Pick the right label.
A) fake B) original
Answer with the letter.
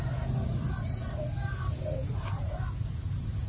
B